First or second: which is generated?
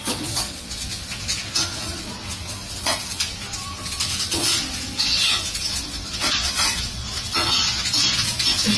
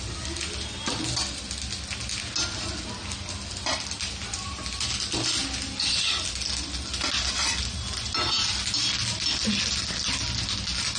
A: first